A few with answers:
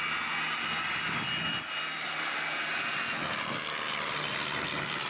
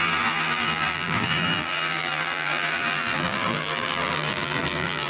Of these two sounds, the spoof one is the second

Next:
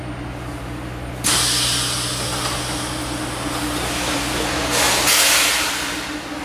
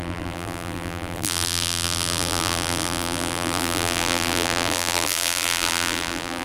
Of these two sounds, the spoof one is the second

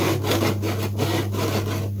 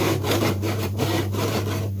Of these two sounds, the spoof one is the second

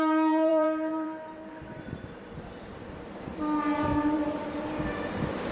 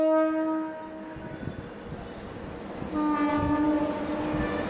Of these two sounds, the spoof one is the first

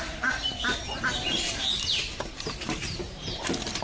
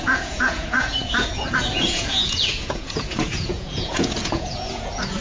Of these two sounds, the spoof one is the second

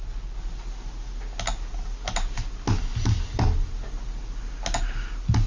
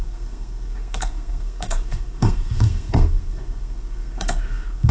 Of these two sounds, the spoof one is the second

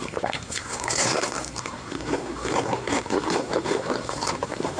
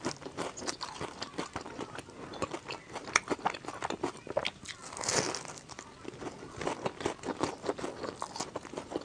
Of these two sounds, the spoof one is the first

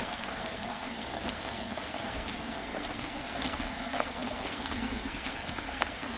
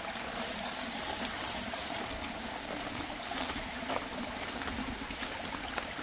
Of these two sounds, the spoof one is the first